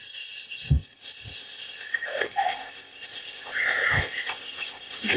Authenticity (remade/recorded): remade